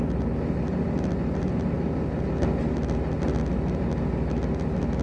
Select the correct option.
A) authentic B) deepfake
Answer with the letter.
A